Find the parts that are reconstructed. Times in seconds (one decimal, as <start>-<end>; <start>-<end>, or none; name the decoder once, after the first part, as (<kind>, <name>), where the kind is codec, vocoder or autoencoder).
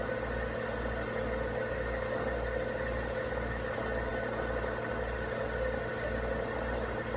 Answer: none